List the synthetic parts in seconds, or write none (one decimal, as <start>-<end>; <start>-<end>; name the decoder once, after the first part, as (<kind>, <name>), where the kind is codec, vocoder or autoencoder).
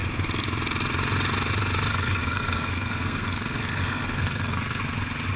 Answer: 1.9-4.8 (codec, SNAC)